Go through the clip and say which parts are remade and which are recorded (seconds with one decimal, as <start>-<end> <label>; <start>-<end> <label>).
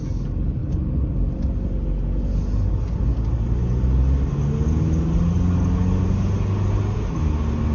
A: 0.0-7.7 recorded